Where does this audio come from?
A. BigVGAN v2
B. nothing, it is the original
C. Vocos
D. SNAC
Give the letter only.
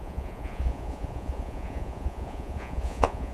C